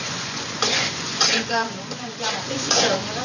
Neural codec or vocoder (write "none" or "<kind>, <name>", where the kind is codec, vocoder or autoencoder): vocoder, Vocos